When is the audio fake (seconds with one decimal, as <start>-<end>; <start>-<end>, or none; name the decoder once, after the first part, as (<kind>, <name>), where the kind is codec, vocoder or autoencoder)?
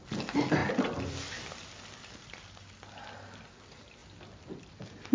none